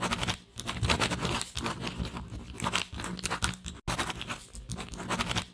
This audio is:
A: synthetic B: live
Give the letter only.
B